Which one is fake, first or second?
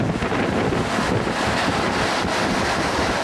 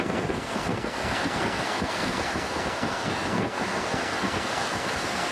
second